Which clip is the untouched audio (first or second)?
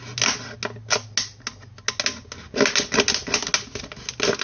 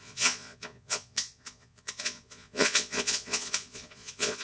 first